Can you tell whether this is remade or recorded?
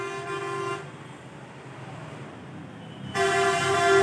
recorded